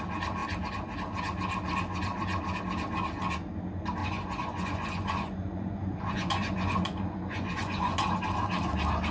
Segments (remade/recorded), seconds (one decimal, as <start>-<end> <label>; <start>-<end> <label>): 0.0-4.0 recorded; 4.0-8.1 remade; 8.1-9.1 recorded